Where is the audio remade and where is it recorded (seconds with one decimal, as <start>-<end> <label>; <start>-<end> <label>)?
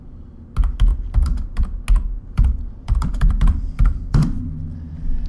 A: 0.0-0.9 recorded; 0.9-1.8 remade; 1.8-2.2 recorded; 2.2-4.5 remade; 4.5-5.3 recorded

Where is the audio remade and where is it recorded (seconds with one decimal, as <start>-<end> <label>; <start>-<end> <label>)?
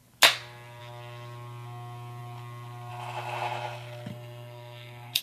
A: 0.0-4.1 recorded; 4.1-5.2 remade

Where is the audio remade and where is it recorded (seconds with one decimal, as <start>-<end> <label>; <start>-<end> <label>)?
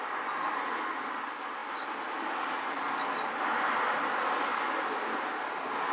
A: 0.0-5.9 recorded